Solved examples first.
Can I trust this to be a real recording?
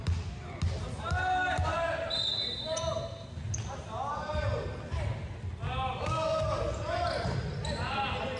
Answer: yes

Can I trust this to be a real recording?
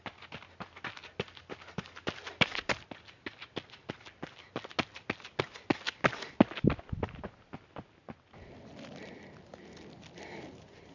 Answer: yes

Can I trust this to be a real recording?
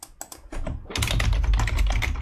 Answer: yes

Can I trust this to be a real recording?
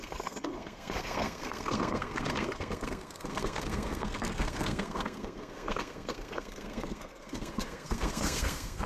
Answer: no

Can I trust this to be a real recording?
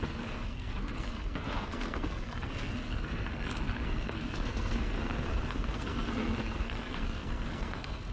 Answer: no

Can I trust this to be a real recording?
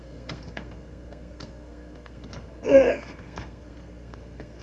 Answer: no